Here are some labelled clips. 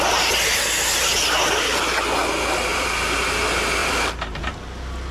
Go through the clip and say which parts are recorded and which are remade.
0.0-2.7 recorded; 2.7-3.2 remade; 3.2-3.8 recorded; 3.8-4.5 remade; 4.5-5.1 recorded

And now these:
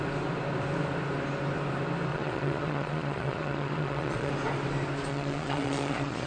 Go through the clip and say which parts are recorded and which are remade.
0.0-2.1 recorded; 2.1-4.3 remade; 4.3-5.1 recorded; 5.1-6.3 remade

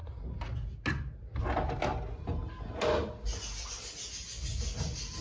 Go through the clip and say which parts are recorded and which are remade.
0.0-5.2 recorded

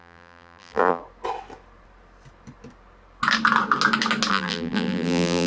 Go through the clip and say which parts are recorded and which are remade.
0.0-1.0 remade; 1.0-4.3 recorded; 4.3-5.5 remade

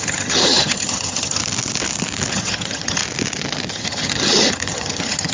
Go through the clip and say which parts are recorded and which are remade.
0.0-1.4 remade; 1.4-2.3 recorded; 2.3-3.0 remade; 3.0-3.7 recorded; 3.7-5.3 remade